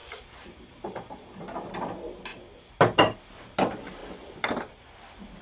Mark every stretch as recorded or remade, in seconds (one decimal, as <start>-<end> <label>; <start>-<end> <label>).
0.0-1.7 remade; 1.7-5.4 recorded